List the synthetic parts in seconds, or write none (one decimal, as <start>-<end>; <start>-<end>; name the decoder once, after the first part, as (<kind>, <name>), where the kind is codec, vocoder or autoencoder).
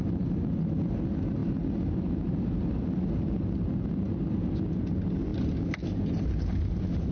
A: none